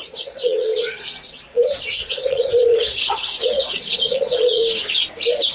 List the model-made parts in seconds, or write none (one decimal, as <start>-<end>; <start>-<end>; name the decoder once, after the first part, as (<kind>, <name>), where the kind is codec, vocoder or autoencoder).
0.0-4.6 (vocoder, Vocos)